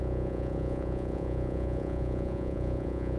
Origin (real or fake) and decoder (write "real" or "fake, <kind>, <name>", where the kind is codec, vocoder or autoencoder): fake, vocoder, Vocos